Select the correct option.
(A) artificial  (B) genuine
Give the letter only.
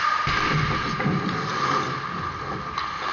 B